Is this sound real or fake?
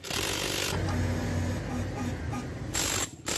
real